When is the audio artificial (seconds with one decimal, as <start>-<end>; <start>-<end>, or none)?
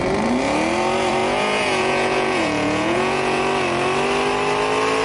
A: 1.2-3.4